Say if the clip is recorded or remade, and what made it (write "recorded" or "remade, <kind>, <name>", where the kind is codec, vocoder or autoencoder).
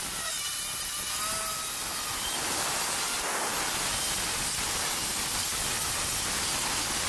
recorded